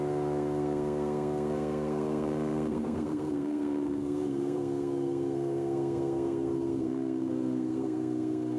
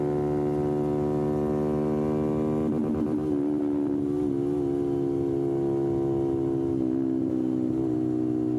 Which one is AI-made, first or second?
first